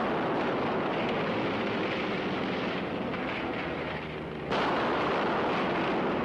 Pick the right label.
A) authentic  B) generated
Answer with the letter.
A